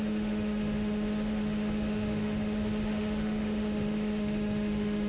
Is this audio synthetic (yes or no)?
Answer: yes